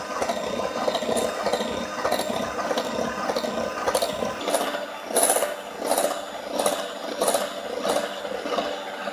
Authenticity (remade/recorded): recorded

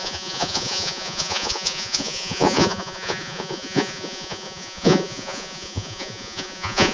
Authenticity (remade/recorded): remade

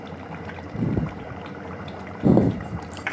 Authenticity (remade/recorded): remade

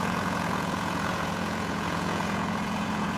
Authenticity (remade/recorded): remade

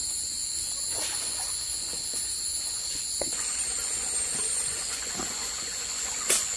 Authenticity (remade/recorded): remade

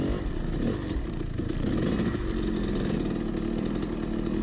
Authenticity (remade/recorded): recorded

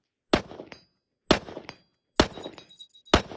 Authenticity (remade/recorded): recorded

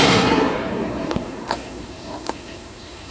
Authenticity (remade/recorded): remade